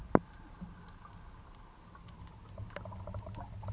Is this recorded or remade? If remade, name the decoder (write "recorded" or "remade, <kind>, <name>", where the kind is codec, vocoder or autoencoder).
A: recorded